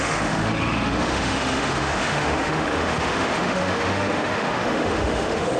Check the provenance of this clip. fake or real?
fake